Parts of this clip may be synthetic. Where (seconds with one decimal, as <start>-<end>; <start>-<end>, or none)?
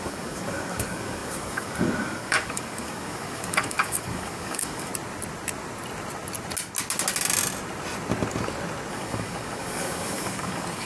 0.0-4.9; 8.9-10.9